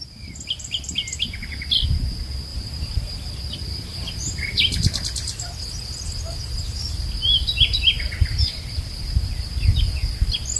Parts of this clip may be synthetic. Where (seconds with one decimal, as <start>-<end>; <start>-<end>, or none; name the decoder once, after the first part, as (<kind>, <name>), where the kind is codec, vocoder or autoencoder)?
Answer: 2.5-3.3 (vocoder, BigVGAN v2); 3.9-4.7

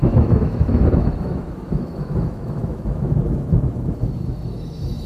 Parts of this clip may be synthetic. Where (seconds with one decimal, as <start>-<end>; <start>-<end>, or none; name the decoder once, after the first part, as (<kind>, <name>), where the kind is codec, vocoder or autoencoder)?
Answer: 0.0-5.1 (autoencoder, DAC-VAE)

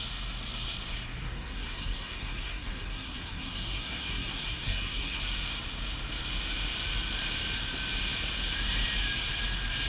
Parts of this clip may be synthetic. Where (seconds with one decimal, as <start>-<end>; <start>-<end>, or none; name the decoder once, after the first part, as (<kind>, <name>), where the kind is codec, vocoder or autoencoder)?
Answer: 1.2-5.2 (codec, SNAC)

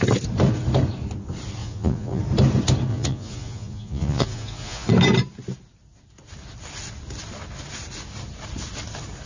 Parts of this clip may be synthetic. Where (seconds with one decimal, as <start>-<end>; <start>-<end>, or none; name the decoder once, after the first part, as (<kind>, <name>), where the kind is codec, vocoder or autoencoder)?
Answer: 1.6-2.2 (vocoder, Vocos); 2.9-4.9